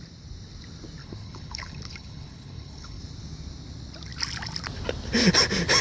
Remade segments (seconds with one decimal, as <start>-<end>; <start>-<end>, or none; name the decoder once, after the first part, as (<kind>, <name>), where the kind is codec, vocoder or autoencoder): 1.0-3.0 (codec, HILCodec)